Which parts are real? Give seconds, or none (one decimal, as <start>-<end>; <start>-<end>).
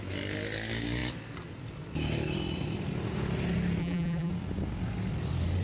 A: 0.0-3.8; 4.3-5.6